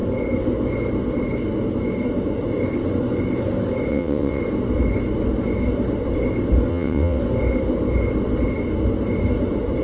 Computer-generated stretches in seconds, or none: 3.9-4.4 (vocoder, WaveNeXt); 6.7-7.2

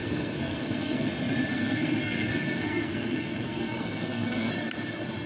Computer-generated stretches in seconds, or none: 0.0-1.1 (codec, SNAC); 1.5-4.5

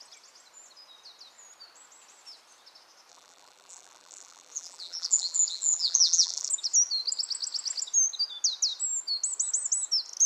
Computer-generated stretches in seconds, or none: 3.1-6.5 (vocoder, BigVGAN v2)

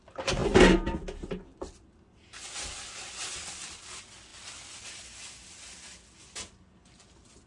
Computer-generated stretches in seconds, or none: none

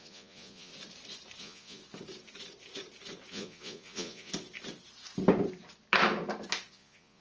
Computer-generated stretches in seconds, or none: 0.0-0.7 (vocoder, Vocos); 1.4-1.8; 3.3-4.3; 6.7-7.2

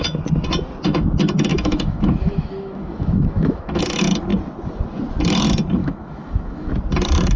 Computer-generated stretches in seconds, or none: 1.5-3.8 (autoencoder, DAC-VAE); 5.8-6.7

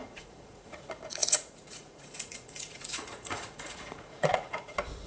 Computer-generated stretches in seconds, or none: 0.0-5.1 (vocoder, Vocos)

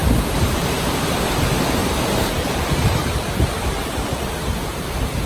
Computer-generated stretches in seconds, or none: 0.0-1.2 (vocoder, BigVGAN v2); 1.8-2.6; 3.0-4.3